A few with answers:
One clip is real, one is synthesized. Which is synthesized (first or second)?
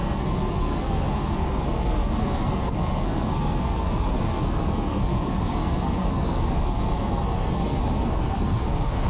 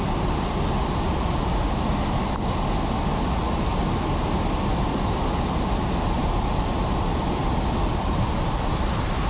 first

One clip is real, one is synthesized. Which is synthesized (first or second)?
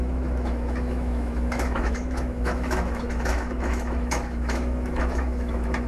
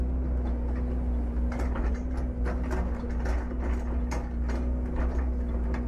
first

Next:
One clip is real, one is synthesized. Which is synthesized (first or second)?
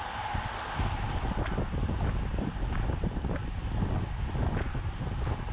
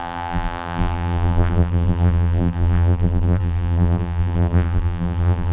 second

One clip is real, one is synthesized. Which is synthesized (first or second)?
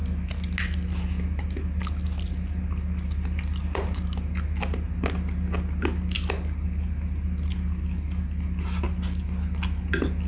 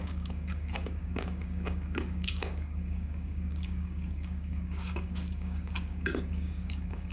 second